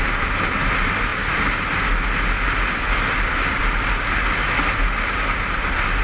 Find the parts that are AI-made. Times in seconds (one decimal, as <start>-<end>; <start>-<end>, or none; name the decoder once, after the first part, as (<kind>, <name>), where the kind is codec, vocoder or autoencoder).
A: none

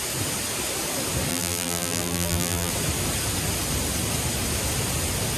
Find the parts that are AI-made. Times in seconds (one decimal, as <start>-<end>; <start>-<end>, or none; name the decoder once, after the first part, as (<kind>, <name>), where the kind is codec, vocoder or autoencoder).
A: 1.3-2.7 (vocoder, BigVGAN v2)

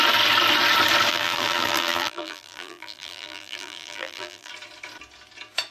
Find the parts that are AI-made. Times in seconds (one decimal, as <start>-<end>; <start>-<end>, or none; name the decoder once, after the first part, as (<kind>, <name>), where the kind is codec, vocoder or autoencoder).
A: 1.1-4.5 (vocoder, BigVGAN v2)

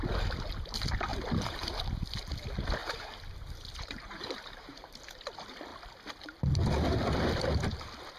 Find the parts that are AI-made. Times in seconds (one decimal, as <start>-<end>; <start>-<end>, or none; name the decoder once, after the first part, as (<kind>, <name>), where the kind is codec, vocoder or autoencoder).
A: 1.1-1.8 (vocoder, BigVGAN v2); 2.8-5.0

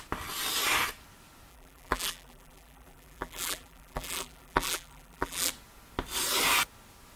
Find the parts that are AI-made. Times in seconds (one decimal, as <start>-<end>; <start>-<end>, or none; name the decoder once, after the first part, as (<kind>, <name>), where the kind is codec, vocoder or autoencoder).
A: 1.5-5.5 (vocoder, BigVGAN v2)